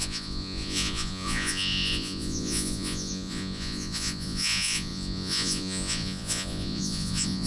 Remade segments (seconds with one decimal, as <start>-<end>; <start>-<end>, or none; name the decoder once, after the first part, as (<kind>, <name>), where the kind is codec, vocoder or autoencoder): 0.0-7.5 (vocoder, Vocos)